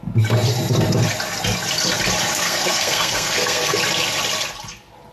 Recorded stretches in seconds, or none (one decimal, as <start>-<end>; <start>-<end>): 0.0-2.4; 3.8-5.1